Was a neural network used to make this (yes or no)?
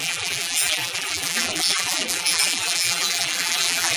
yes